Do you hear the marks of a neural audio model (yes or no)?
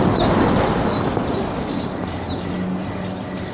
no